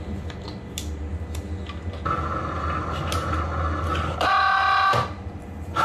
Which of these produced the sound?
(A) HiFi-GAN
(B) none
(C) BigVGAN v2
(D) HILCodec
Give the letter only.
B